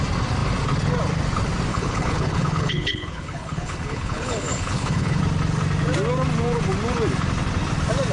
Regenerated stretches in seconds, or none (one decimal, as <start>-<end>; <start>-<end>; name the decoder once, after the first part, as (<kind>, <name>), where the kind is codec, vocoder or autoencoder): 1.7-5.2 (codec, HILCodec)